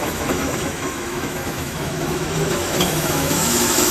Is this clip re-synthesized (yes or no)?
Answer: yes